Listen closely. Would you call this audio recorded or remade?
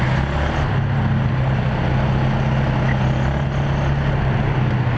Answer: recorded